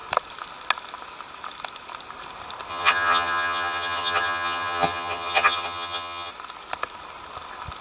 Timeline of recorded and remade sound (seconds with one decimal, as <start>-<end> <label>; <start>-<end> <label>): 0.0-2.7 recorded; 2.7-6.3 remade; 6.3-7.8 recorded